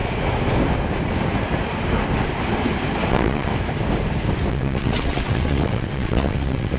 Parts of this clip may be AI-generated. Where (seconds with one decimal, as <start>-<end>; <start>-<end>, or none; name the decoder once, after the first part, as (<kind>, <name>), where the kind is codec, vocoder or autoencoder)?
3.1-3.5 (vocoder, WaveNeXt); 4.5-6.8